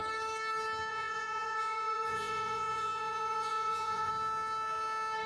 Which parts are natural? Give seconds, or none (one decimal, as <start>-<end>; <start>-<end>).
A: 0.0-0.9; 4.1-5.3